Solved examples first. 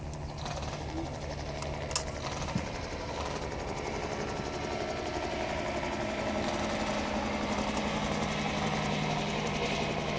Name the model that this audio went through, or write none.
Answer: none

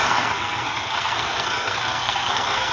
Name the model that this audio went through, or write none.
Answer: codec, SNAC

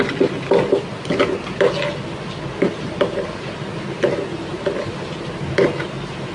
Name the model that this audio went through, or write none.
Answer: none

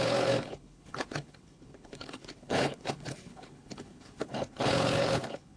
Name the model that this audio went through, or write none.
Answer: codec, HILCodec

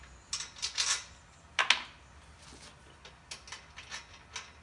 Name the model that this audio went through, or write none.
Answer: none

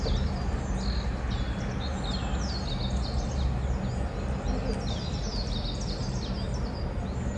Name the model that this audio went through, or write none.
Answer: none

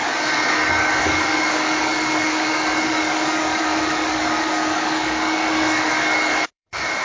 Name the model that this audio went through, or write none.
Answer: codec, DAC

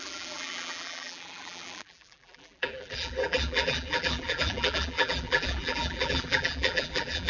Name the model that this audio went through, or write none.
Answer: vocoder, BigVGAN v2